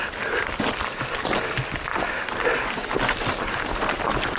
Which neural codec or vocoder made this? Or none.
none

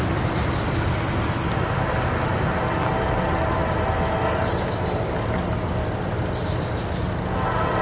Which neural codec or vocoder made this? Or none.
none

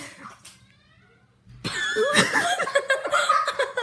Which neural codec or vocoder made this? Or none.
none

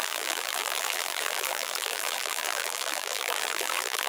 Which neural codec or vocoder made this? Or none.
vocoder, BigVGAN v2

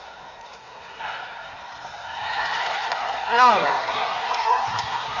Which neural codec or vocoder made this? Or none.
codec, SNAC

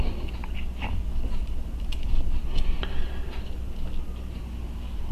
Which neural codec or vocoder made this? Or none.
none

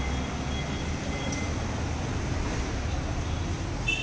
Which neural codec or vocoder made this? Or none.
none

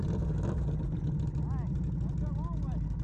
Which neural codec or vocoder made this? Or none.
none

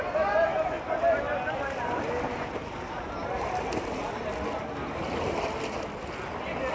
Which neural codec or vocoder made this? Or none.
none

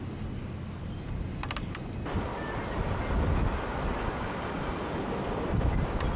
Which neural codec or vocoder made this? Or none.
none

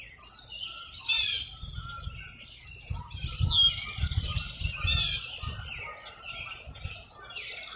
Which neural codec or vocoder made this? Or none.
none